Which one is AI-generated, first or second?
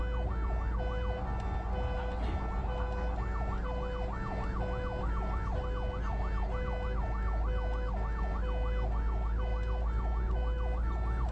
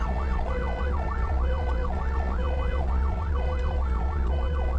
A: second